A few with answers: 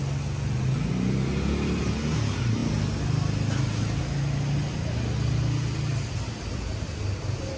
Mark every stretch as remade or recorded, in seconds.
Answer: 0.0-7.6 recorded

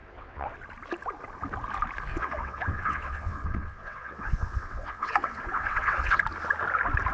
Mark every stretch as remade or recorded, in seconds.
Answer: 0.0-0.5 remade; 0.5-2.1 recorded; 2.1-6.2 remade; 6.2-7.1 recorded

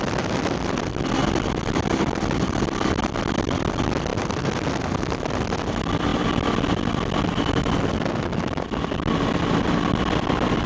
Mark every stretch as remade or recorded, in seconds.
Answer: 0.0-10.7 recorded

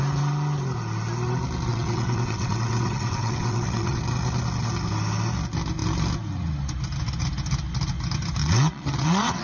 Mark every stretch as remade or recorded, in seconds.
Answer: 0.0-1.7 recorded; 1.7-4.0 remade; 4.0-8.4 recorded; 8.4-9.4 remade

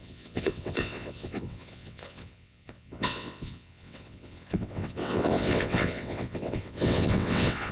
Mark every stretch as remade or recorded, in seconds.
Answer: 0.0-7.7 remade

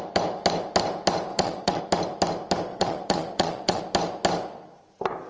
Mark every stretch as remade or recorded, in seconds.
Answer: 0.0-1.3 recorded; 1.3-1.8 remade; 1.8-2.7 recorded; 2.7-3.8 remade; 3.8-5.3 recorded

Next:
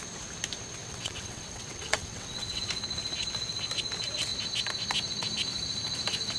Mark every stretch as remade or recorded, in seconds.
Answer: 0.0-0.8 recorded; 0.8-2.6 remade; 2.6-6.4 recorded